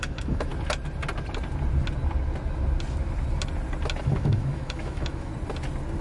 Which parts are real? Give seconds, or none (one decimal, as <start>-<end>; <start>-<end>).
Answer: 0.5-4.1; 5.3-6.0